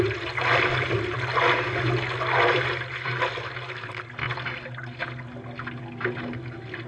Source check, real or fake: real